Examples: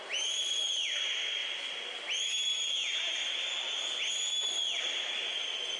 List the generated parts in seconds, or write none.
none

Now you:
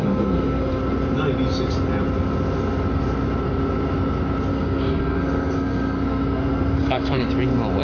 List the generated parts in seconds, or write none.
0.0-0.8; 4.5-7.3

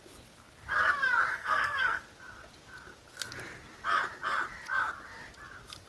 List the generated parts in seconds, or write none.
1.3-2.0

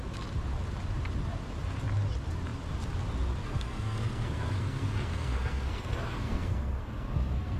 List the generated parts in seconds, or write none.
3.4-7.6

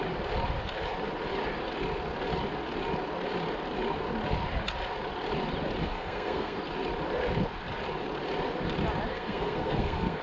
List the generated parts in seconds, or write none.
5.8-6.6; 9.1-10.2

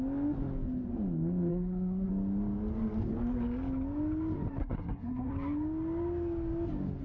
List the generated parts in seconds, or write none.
1.5-2.1; 4.6-5.3